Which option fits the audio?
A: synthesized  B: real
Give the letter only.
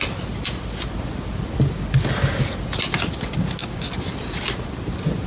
B